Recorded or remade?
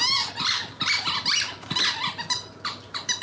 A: recorded